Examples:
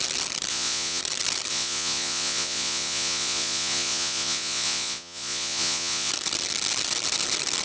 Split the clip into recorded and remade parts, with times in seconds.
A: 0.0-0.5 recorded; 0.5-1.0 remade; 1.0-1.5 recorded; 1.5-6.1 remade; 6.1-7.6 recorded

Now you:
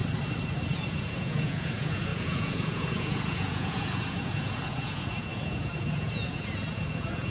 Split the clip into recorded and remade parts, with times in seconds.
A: 0.0-0.7 recorded; 0.7-7.3 remade

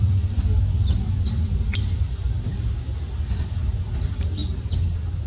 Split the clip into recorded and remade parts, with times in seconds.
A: 0.0-5.3 recorded